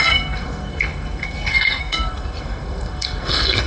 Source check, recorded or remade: remade